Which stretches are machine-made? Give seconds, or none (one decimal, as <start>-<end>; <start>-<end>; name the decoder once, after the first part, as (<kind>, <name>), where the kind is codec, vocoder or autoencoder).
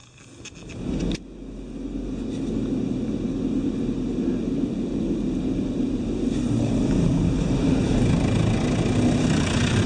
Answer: none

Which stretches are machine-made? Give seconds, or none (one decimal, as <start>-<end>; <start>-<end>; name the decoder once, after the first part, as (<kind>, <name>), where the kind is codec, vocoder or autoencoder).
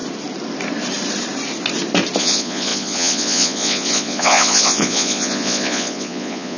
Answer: 2.2-6.6 (vocoder, Vocos)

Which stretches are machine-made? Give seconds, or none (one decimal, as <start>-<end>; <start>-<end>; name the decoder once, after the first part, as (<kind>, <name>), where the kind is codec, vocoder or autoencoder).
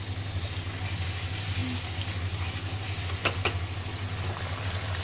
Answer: none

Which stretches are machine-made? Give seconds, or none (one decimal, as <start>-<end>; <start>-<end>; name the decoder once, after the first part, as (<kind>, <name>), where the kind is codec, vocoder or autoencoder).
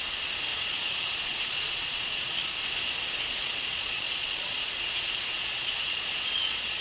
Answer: 0.5-2.5 (vocoder, Vocos); 3.3-6.8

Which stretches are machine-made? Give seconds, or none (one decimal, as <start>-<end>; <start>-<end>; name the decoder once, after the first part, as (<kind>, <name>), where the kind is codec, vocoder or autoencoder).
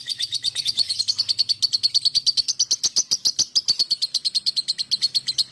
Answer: 0.0-1.0 (vocoder, Vocos)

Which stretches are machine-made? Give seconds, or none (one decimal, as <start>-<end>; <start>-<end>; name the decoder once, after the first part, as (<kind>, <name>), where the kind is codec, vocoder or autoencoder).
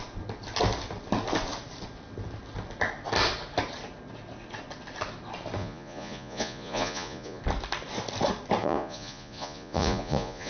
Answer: 5.6-7.4 (vocoder, Vocos); 8.6-10.5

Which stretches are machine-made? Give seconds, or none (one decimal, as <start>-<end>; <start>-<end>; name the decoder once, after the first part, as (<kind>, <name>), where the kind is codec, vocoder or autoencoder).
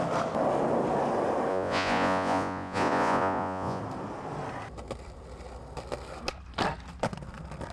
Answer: 1.5-3.8 (vocoder, Vocos)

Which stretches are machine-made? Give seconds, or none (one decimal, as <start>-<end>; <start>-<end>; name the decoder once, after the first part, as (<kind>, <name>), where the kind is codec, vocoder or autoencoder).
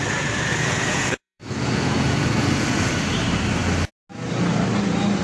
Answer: 0.5-2.9 (vocoder, Vocos)